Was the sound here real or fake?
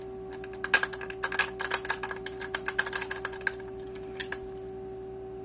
real